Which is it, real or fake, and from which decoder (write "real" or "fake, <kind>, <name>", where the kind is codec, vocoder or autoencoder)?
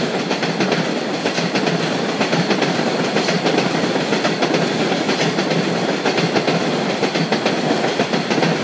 real